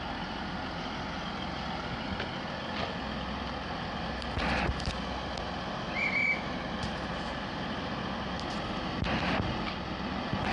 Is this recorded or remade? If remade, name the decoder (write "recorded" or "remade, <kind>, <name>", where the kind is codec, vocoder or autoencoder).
recorded